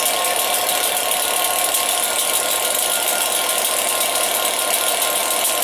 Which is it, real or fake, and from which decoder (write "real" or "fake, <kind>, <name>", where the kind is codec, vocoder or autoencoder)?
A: real